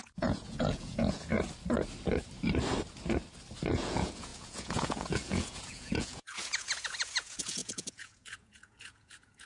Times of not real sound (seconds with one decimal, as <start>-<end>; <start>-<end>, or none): 0.0-1.3; 3.7-9.5